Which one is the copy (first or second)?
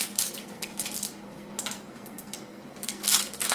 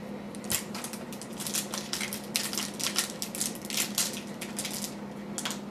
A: first